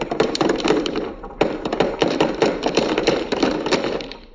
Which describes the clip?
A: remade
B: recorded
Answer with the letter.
A